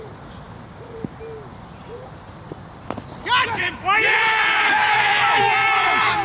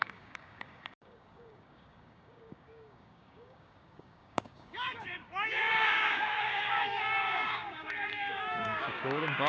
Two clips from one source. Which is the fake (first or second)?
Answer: second